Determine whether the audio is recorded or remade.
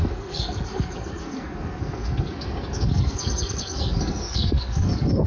remade